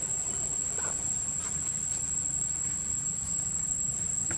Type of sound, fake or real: real